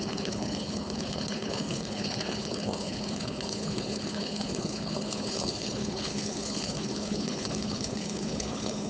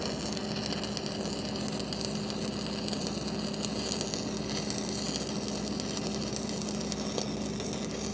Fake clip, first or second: first